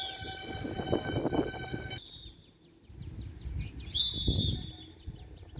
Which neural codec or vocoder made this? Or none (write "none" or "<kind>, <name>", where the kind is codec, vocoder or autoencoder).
none